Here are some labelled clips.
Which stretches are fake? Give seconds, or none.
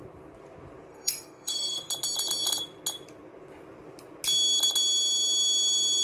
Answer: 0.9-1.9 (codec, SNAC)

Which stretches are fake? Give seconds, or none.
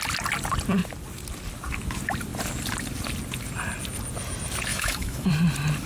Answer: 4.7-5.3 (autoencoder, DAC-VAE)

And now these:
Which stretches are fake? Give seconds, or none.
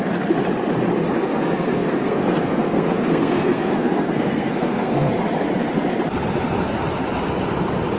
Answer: 1.2-5.1 (codec, SNAC)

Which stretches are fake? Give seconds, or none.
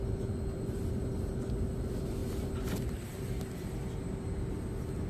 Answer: none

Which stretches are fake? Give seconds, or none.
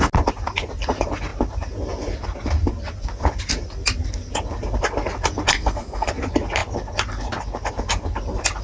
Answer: 5.5-6.1 (codec, SNAC)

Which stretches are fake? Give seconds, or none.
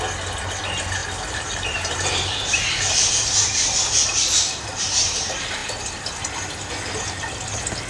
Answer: 1.0-3.1 (vocoder, BigVGAN v2)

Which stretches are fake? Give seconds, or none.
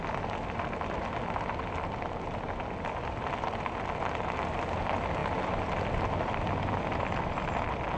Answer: none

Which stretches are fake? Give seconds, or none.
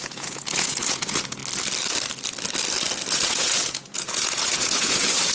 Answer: 0.0-1.4 (vocoder, Vocos); 3.1-5.3